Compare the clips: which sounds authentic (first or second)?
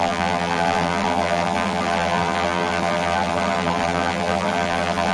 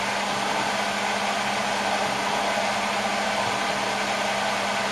second